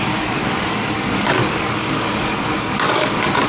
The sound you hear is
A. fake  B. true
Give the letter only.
A